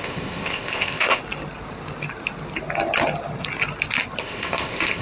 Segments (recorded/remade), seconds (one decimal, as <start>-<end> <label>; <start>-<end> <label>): 0.0-1.2 remade; 1.2-4.2 recorded; 4.2-5.0 remade